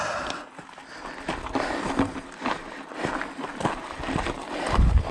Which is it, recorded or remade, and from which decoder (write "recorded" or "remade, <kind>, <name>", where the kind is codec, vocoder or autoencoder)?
recorded